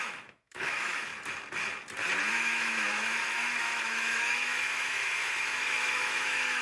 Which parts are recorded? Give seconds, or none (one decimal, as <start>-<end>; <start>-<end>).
1.1-2.3